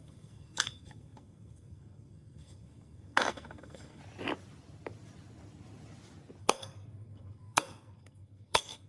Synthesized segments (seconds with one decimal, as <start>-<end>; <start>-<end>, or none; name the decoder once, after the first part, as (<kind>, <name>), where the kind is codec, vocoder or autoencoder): 0.0-4.0 (codec, SNAC); 6.4-8.9